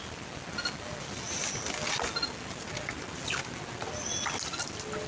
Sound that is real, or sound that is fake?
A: real